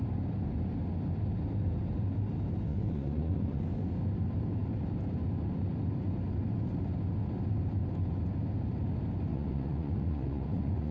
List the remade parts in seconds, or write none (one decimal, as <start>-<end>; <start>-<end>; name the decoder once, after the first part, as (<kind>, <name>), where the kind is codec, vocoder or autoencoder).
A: 2.7-3.6 (vocoder, Vocos); 9.3-10.9